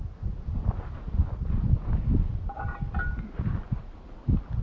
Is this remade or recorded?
recorded